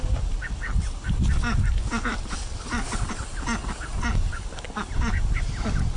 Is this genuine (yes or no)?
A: yes